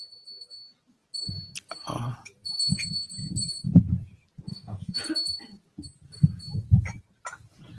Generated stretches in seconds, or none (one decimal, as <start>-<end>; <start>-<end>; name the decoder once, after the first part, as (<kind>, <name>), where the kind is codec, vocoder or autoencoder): 4.5-5.0 (autoencoder, DAC-VAE)